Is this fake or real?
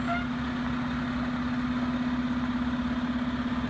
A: real